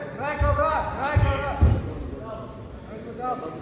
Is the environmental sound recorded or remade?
recorded